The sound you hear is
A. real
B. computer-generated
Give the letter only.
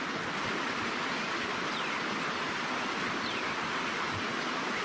A